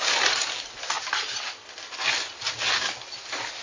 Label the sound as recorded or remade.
recorded